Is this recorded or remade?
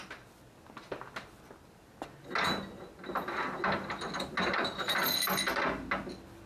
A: recorded